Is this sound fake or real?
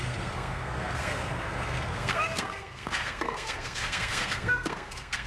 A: fake